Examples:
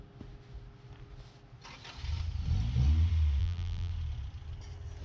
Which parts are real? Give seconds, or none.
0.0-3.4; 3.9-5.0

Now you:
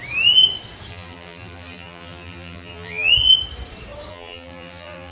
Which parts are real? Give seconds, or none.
0.0-0.9; 3.1-4.1

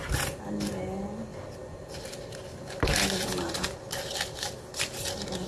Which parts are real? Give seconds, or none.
0.0-5.5

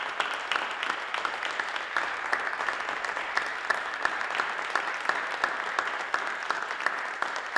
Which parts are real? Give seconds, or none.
0.0-7.6